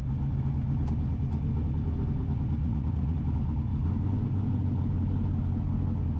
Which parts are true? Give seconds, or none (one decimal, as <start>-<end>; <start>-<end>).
0.0-2.6; 3.2-6.2